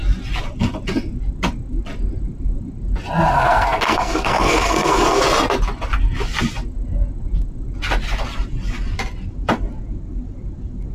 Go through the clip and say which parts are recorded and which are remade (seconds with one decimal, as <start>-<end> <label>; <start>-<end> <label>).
0.0-3.3 recorded; 3.3-5.2 remade; 5.2-10.9 recorded